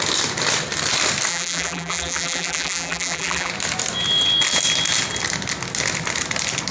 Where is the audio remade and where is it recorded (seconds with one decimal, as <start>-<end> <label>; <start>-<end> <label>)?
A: 0.0-1.3 recorded; 1.3-3.5 remade; 3.5-6.7 recorded